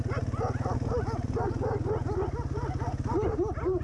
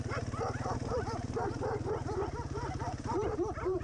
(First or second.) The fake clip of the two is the second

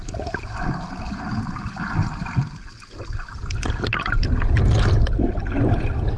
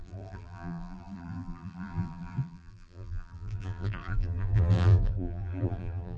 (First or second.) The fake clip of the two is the second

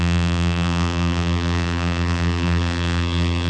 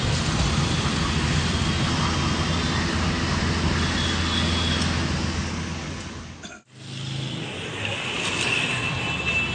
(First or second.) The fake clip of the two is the first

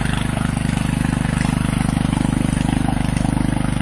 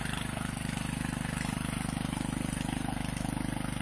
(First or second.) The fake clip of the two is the second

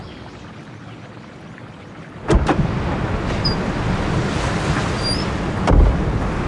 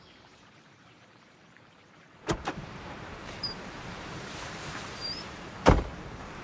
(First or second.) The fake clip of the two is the second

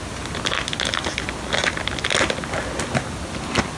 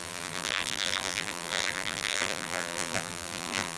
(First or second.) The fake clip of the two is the second